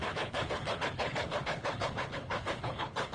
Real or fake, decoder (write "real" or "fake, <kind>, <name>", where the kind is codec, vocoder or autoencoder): fake, codec, HILCodec